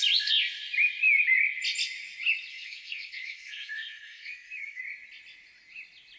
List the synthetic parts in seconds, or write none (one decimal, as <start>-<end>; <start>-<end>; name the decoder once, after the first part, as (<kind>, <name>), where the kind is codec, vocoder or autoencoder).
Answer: 2.5-4.8 (codec, SNAC)